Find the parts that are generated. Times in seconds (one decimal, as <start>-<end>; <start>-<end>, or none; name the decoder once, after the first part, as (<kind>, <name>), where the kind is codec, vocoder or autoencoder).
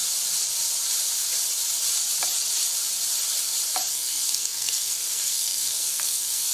3.9-6.5 (codec, SNAC)